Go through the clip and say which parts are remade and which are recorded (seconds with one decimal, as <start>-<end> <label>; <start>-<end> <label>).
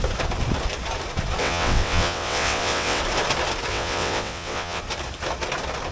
0.0-1.4 recorded; 1.4-3.0 remade; 3.0-3.7 recorded; 3.7-4.8 remade; 4.8-5.9 recorded